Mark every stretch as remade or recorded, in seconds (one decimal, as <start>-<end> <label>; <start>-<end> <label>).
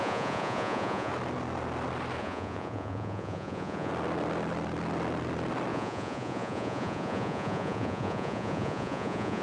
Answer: 0.0-1.1 remade; 1.1-2.2 recorded; 2.2-3.9 remade; 3.9-5.7 recorded; 5.7-9.4 remade